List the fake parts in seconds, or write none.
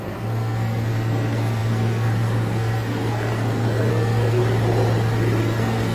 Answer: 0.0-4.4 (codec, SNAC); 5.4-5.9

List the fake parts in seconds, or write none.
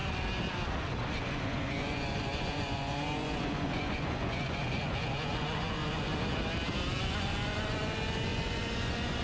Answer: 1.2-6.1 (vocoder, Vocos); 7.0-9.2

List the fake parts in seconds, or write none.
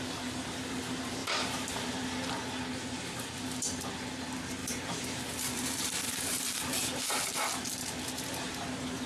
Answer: 1.2-1.9 (vocoder, BigVGAN v2); 4.6-6.8